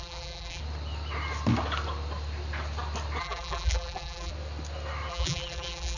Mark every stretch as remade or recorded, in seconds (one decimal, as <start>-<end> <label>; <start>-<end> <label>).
0.0-0.6 remade; 0.6-3.2 recorded; 3.2-4.3 remade; 4.3-5.1 recorded; 5.1-6.0 remade